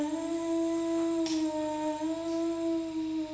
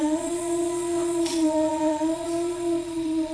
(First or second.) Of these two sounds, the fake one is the second